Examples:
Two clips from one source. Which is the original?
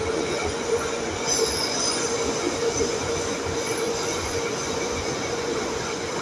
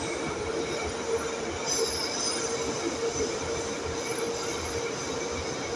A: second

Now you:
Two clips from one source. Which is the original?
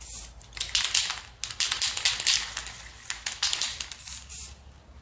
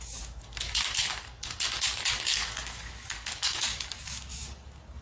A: first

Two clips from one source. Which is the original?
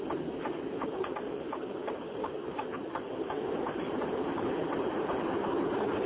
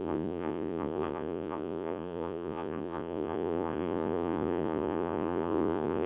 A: first